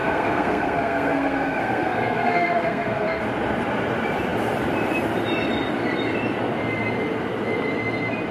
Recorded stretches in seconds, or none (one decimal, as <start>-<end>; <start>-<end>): 3.2-8.3